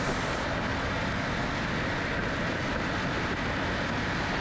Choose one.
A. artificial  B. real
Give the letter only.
B